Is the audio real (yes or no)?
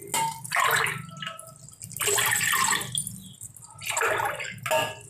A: yes